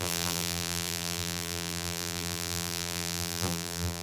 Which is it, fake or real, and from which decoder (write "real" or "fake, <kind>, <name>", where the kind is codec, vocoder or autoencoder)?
fake, vocoder, BigVGAN v2